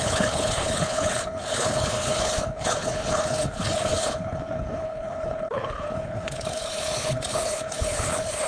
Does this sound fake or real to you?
fake